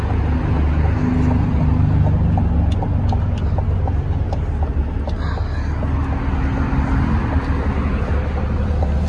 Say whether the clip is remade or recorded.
recorded